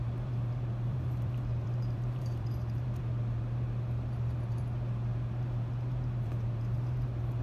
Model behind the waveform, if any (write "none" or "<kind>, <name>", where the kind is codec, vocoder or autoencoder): vocoder, BigVGAN v2